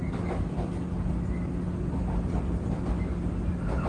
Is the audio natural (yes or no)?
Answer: yes